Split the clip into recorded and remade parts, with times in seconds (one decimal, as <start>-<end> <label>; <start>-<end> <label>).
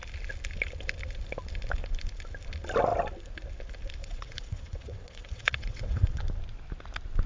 0.0-4.0 recorded; 4.0-6.2 remade; 6.2-7.3 recorded